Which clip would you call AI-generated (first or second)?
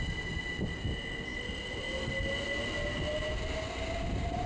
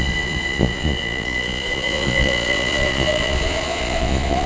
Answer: second